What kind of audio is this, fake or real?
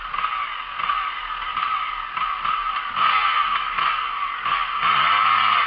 real